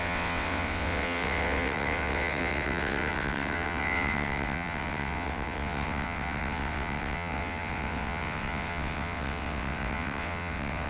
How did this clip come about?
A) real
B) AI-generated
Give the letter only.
B